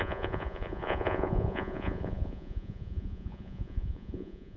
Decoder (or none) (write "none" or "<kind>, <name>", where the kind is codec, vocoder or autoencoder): vocoder, Vocos